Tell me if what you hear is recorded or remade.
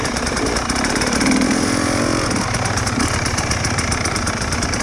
remade